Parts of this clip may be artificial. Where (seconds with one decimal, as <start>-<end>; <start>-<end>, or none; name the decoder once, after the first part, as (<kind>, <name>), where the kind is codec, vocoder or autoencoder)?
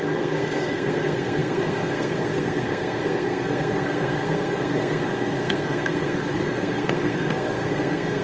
0.0-8.2 (codec, SNAC)